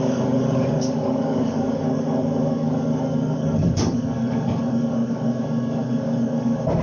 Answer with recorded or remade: remade